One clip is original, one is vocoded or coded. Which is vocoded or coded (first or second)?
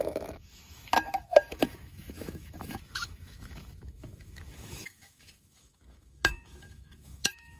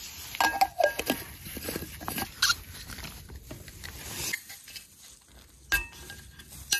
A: first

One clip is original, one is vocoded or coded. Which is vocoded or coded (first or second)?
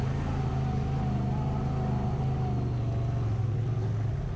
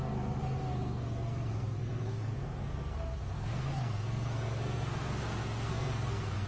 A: second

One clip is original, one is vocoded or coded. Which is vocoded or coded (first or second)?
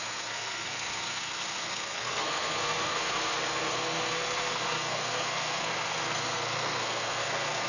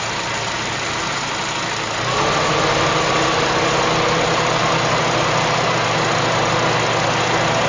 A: first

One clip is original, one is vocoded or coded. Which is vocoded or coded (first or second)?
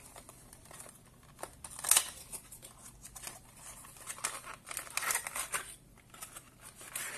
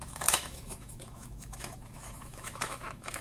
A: second